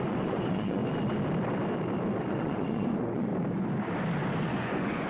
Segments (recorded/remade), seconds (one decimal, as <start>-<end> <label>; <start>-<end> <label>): 0.0-0.8 remade; 0.8-2.3 recorded; 2.3-3.3 remade; 3.3-4.4 recorded; 4.4-5.1 remade